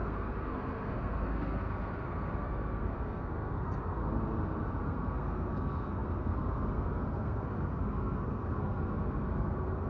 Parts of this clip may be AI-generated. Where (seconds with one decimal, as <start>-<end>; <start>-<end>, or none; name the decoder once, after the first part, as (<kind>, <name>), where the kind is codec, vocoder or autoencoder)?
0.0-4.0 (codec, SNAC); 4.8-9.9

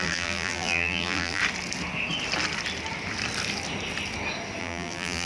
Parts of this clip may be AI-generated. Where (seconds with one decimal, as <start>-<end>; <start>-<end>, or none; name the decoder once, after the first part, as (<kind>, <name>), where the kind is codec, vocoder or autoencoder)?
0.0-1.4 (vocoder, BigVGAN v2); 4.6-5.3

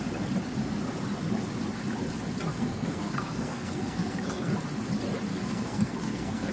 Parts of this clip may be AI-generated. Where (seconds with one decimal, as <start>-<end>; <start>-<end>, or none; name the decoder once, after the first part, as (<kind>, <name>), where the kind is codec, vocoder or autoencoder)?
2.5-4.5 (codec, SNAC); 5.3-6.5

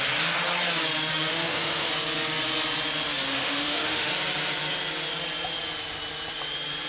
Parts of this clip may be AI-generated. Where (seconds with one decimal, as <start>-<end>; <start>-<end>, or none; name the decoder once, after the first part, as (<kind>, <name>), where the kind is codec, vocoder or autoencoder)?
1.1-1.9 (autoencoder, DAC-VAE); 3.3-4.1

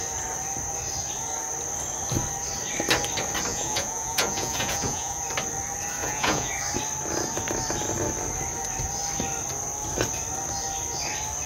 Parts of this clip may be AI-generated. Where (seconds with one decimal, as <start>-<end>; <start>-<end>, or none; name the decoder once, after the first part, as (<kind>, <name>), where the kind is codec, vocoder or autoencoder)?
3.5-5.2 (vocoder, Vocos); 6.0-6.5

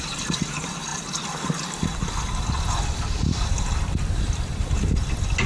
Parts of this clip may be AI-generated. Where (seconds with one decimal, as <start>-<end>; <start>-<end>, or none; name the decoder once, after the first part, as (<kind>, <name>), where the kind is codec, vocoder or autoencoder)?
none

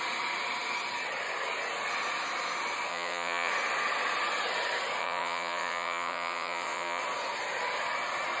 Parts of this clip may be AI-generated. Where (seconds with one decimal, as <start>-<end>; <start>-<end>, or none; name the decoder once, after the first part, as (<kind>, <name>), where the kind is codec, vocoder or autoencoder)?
2.9-3.5 (vocoder, WaveNeXt); 5.0-7.0